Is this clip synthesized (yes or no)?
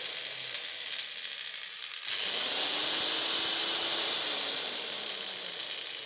no